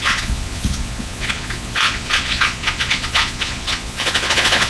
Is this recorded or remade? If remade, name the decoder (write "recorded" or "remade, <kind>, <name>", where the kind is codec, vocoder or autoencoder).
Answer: remade, vocoder, Vocos